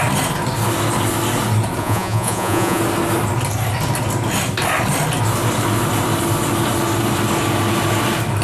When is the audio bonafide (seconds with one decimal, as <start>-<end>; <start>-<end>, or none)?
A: 0.0-1.8; 2.8-8.4